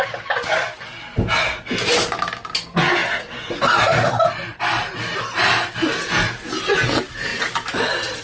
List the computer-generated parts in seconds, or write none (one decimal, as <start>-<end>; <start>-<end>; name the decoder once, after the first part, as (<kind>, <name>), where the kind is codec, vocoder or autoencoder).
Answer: 3.0-4.6 (vocoder, BigVGAN v2); 7.3-8.2